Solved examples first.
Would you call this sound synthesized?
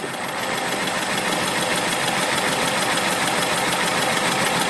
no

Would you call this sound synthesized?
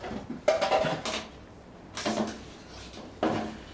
no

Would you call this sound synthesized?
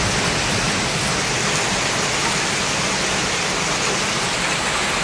no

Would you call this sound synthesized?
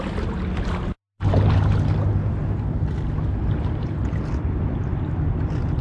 no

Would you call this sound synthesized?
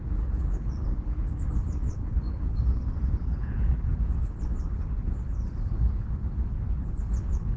yes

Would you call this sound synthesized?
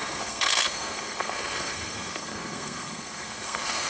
yes